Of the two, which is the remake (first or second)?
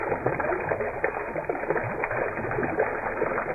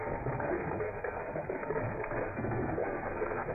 second